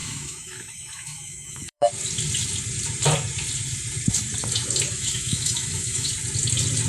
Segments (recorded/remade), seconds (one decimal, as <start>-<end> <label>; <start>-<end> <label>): 0.0-1.9 remade; 1.9-4.9 recorded; 4.9-6.1 remade; 6.1-6.9 recorded